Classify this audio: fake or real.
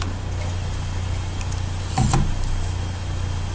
real